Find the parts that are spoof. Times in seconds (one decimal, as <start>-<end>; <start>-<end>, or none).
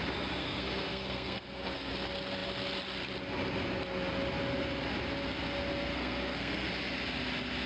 0.4-1.9; 5.9-6.7